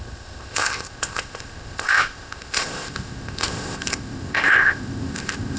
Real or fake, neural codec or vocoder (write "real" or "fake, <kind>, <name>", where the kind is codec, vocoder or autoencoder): fake, codec, ZipCodec